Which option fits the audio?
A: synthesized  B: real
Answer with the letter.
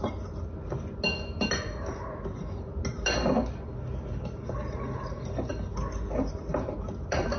B